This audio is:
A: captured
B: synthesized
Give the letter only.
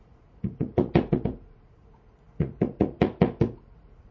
B